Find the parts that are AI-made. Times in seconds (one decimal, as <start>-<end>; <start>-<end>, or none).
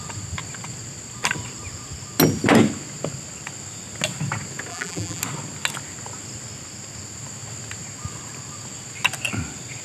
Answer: 4.7-5.2